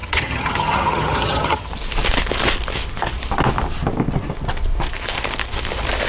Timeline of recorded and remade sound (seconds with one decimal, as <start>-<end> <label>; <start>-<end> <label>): 0.0-1.7 remade; 1.7-6.1 recorded